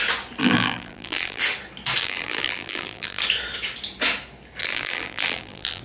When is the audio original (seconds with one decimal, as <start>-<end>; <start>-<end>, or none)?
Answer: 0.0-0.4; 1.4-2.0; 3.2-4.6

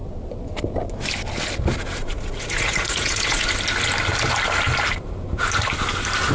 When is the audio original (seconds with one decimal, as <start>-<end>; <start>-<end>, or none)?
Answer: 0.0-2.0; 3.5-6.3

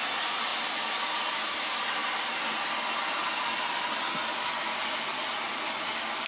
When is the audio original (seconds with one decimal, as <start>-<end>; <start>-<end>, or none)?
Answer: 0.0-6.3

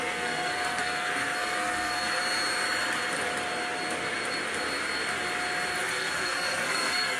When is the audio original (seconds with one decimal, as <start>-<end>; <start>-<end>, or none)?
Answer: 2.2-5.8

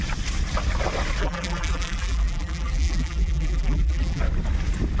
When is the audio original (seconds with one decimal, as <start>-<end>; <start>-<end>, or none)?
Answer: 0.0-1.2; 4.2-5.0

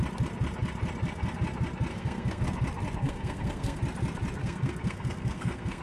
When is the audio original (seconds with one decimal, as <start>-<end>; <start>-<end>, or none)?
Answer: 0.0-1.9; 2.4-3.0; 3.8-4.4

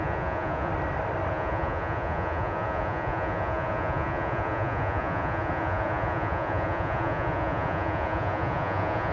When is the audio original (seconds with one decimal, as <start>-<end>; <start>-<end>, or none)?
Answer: 0.7-1.3

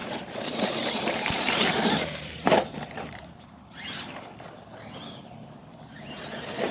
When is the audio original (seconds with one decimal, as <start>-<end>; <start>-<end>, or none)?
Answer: 4.0-6.7